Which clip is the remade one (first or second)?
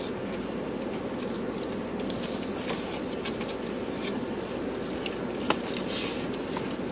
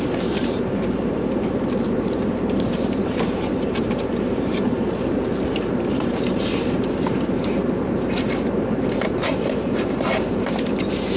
second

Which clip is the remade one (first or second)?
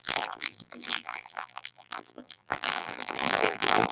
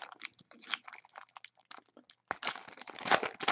first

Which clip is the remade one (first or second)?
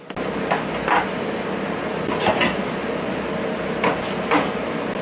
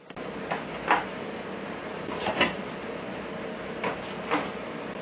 second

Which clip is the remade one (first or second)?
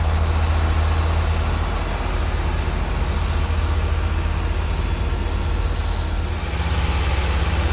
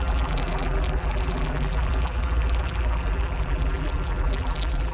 second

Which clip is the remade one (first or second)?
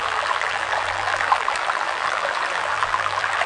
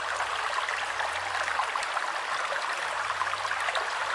first